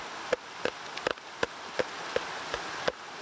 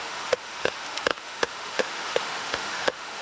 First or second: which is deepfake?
second